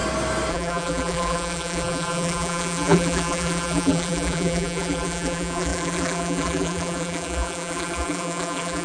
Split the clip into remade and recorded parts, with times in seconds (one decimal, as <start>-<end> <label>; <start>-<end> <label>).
0.0-0.5 recorded; 0.5-8.8 remade